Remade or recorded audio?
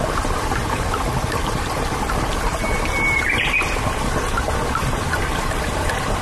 remade